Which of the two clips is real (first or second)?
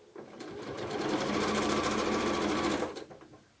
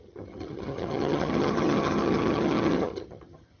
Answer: first